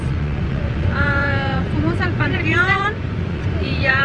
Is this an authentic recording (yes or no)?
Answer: no